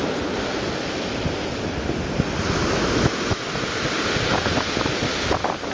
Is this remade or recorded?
recorded